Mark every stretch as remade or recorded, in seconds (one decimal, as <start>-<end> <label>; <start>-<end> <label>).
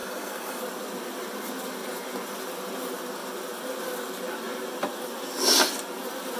0.0-0.6 remade; 0.6-6.4 recorded